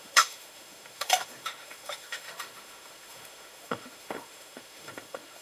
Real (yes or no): no